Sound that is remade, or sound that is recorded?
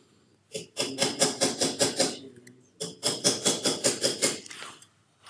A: recorded